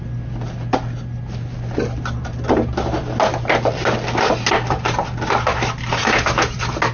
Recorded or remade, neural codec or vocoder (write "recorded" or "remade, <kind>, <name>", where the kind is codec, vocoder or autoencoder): recorded